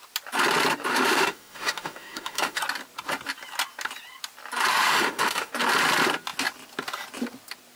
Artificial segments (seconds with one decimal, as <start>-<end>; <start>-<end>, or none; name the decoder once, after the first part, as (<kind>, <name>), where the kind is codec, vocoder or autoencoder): 0.9-2.6 (autoencoder, DAC-VAE); 4.7-5.5